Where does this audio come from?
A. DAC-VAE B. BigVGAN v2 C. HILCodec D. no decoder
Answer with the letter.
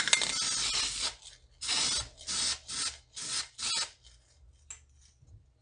D